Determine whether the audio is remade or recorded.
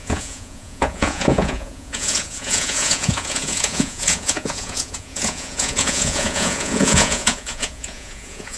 remade